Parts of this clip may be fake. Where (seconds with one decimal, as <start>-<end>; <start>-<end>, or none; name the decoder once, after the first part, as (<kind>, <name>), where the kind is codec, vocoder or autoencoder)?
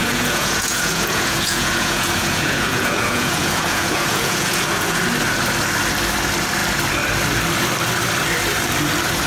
0.0-5.0 (vocoder, Vocos)